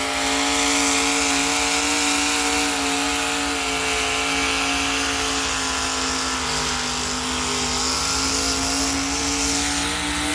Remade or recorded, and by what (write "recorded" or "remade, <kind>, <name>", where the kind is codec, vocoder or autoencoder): recorded